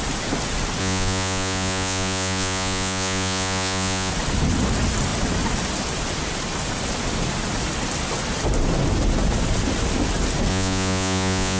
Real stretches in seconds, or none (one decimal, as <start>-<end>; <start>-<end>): 0.0-0.8; 4.1-10.5